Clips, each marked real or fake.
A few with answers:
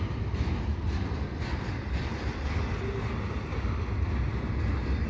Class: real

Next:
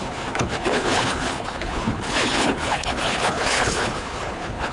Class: fake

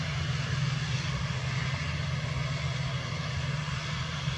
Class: real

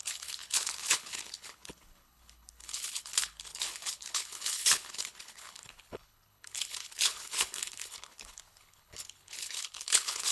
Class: fake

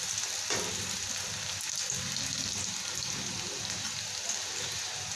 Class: real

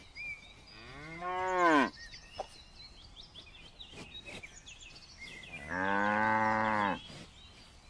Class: real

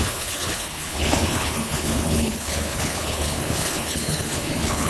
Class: fake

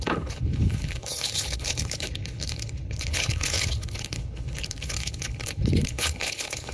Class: fake